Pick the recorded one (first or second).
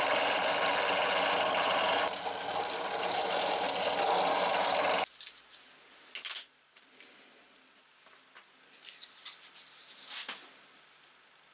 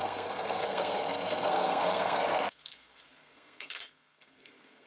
first